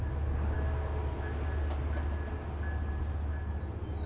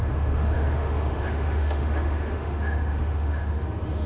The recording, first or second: first